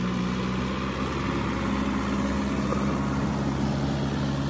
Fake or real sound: real